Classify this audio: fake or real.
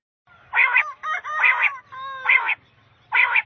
real